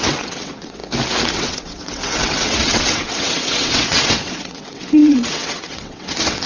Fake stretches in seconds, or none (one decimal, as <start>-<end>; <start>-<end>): 0.0-0.8; 1.3-6.5